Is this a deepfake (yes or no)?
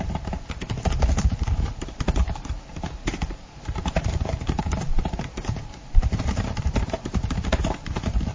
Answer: yes